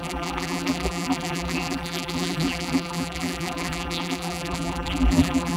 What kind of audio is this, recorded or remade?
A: remade